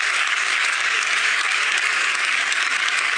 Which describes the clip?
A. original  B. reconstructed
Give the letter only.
B